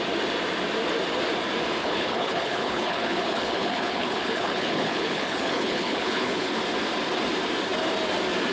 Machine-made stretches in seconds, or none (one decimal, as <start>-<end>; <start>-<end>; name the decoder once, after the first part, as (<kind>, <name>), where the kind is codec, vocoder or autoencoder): 1.8-6.5 (codec, HILCodec)